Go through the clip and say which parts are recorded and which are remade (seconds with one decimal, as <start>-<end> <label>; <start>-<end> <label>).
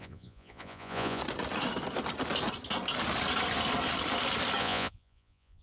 0.0-1.2 remade; 1.2-4.6 recorded; 4.6-5.6 remade